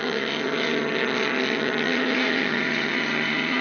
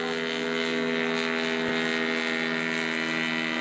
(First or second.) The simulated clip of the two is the first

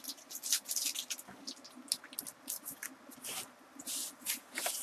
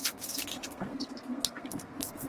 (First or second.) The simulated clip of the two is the second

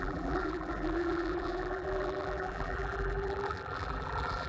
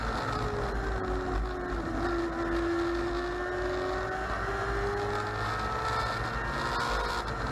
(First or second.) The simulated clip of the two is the first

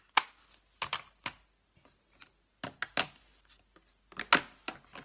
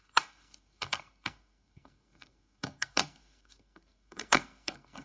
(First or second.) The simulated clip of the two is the second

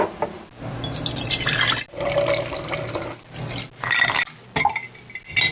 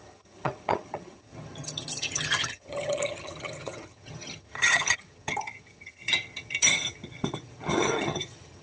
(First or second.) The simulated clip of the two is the second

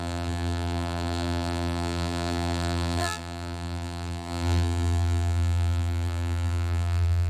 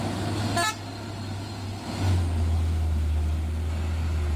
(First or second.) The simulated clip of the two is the first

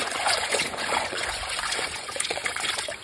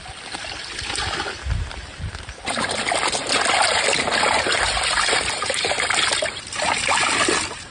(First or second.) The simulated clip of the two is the first